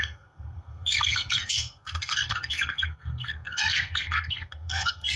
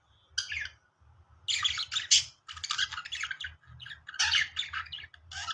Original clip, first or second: second